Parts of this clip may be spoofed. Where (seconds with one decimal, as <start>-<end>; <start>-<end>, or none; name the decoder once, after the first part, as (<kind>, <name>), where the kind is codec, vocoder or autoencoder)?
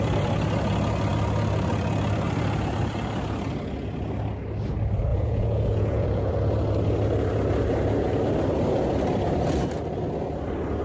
5.1-6.3 (vocoder, Vocos)